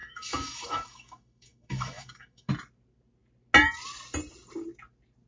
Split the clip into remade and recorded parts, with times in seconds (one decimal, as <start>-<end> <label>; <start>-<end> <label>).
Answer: 0.0-2.5 remade; 2.5-5.3 recorded